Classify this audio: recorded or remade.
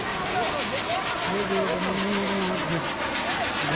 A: recorded